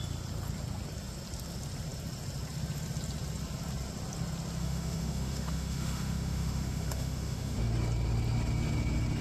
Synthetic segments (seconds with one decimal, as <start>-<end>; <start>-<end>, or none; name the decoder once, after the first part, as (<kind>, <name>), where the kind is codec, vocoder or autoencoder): 4.6-7.7 (autoencoder, DAC-VAE)